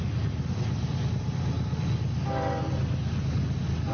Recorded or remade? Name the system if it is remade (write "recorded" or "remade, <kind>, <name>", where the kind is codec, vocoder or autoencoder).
recorded